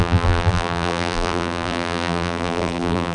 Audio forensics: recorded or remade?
remade